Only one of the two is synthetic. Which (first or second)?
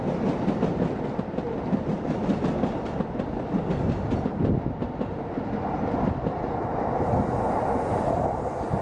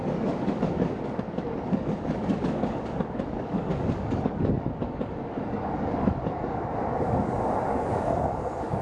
second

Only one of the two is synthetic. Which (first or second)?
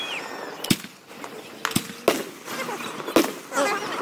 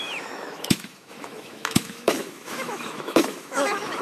second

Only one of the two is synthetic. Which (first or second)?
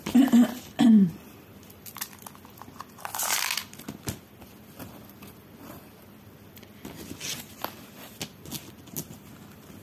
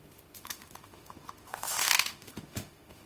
second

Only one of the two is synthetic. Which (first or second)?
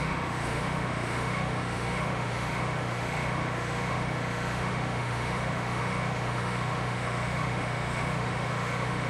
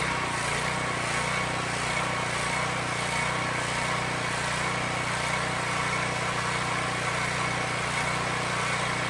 first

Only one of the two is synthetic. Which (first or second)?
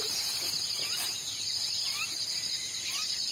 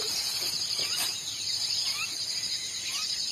second